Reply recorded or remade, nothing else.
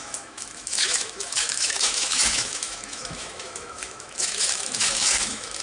remade